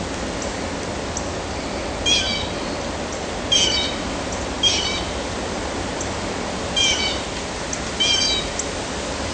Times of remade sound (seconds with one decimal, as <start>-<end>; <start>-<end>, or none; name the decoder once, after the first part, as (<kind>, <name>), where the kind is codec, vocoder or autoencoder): none